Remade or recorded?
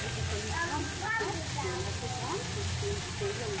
recorded